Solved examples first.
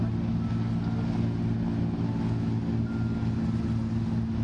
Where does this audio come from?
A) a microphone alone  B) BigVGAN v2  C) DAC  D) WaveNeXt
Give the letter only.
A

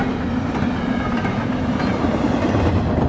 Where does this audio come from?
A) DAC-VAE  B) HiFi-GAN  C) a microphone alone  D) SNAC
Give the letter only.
C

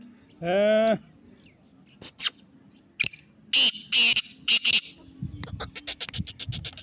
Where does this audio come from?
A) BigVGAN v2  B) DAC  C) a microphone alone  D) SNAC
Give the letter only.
C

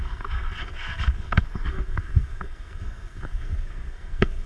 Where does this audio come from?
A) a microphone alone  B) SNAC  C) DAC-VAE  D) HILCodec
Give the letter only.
B